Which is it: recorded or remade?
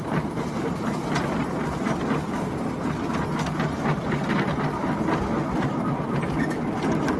recorded